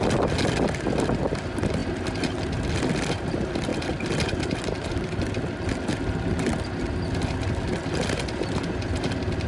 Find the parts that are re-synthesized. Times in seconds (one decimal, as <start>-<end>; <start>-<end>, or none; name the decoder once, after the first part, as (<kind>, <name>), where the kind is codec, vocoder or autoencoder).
none